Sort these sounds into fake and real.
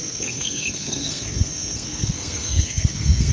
fake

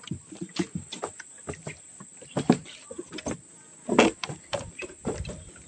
real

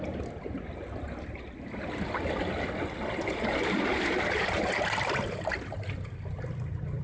real